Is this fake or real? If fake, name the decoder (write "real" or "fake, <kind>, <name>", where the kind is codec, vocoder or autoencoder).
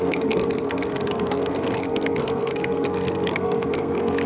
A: fake, codec, SNAC